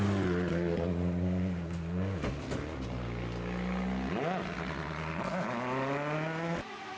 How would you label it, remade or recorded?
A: recorded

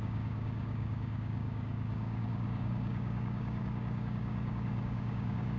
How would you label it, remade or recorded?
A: remade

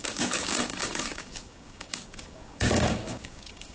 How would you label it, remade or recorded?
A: remade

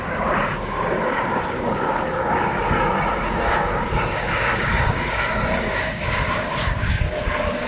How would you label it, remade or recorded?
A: remade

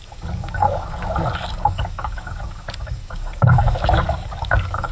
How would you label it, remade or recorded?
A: remade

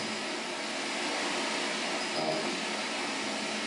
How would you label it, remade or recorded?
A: recorded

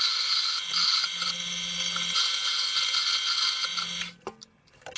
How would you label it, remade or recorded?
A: recorded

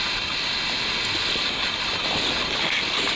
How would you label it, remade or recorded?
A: recorded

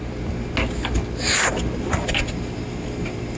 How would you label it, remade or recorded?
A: recorded